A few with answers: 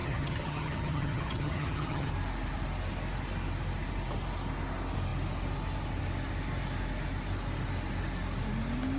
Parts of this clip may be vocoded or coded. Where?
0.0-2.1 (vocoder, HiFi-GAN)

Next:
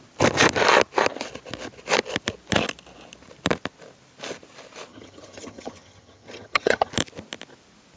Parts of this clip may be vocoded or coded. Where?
4.9-6.9 (vocoder, HiFi-GAN)

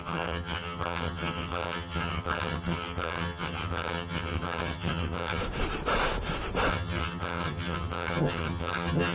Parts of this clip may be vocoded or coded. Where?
0.0-5.4 (vocoder, HiFi-GAN); 6.7-9.1

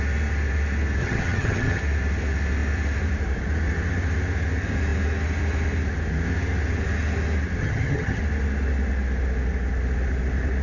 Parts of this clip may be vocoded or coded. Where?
1.0-1.8 (vocoder, HiFi-GAN); 7.6-8.2

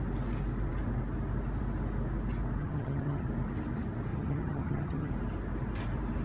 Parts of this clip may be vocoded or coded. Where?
2.6-3.3 (vocoder, HiFi-GAN); 4.1-5.1